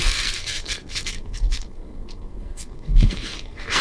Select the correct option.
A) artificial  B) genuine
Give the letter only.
A